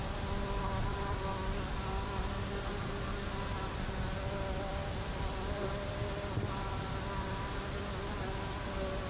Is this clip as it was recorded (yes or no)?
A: yes